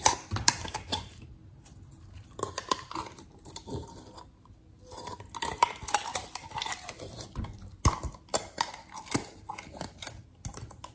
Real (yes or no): yes